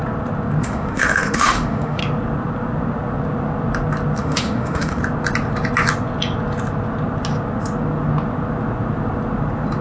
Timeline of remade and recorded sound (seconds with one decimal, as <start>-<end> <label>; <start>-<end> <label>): 0.0-0.6 recorded; 0.6-2.0 remade; 2.0-4.2 recorded; 4.2-5.0 remade; 5.0-9.8 recorded

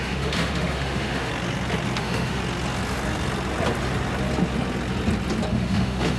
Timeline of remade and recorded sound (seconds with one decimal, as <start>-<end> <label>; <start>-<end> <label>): 0.0-1.3 remade; 1.3-2.0 recorded; 2.0-2.4 remade; 2.4-5.5 recorded; 5.5-6.2 remade

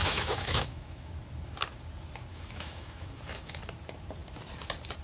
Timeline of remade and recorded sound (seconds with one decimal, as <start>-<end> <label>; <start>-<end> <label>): 0.0-1.1 remade; 1.1-2.3 recorded; 2.3-3.5 remade; 3.5-5.0 recorded

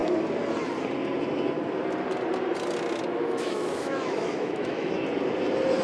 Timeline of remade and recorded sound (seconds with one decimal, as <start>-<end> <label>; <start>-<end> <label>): 0.0-3.1 recorded; 3.1-4.9 remade; 4.9-5.8 recorded